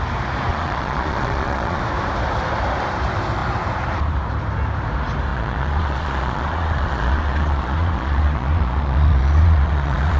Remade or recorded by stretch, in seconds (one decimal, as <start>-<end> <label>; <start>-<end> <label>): 0.0-0.5 recorded; 0.5-1.8 remade; 1.8-5.3 recorded; 5.3-10.2 remade